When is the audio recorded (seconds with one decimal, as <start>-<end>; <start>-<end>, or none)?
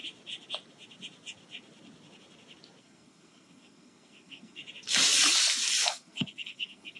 0.0-2.8; 4.6-5.9